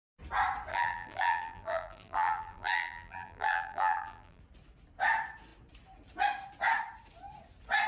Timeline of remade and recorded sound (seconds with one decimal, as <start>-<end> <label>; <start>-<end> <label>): 0.0-0.7 recorded; 0.7-4.4 remade; 4.4-7.9 recorded